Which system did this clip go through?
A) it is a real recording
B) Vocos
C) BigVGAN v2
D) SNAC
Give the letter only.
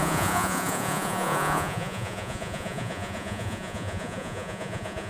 B